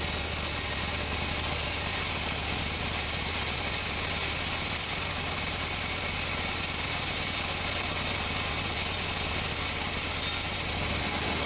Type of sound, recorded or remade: recorded